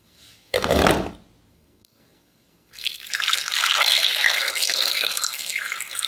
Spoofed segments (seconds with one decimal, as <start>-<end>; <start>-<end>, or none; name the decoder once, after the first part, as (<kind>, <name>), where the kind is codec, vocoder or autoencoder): 0.0-0.8 (codec, SNAC); 1.5-6.1